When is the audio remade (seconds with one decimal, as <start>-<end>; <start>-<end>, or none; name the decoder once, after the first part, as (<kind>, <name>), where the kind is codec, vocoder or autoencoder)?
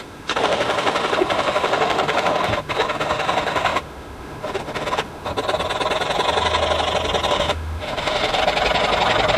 0.0-5.3 (autoencoder, DAC-VAE); 7.3-8.4